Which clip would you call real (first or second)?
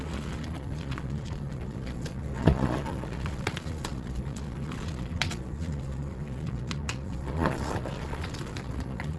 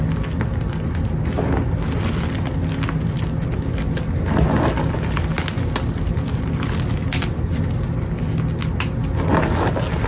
second